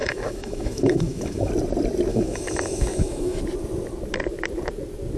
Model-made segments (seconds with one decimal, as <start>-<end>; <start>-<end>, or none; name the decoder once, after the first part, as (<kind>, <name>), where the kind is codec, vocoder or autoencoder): 0.0-1.5 (autoencoder, DAC-VAE); 2.1-3.4